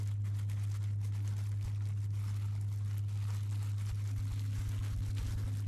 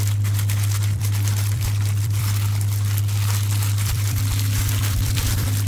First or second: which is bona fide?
first